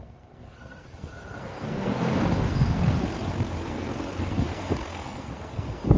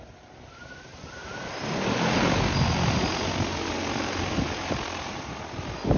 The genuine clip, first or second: second